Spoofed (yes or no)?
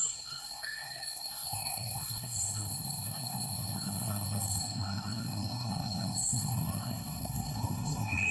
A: yes